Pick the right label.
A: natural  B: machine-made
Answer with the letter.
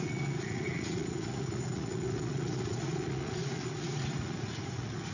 B